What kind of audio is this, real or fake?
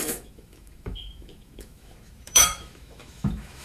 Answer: fake